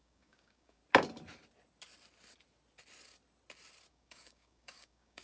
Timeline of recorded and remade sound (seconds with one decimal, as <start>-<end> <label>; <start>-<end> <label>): 0.0-0.8 remade; 0.8-3.9 recorded; 3.9-5.2 remade